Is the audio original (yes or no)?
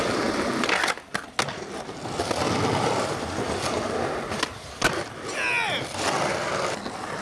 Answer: yes